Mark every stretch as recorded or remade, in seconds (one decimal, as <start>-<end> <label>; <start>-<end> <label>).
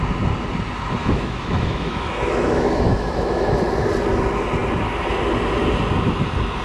0.0-1.0 recorded; 1.0-3.6 remade; 3.6-6.6 recorded